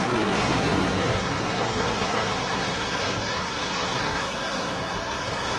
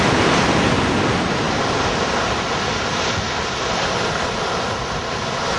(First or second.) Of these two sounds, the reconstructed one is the first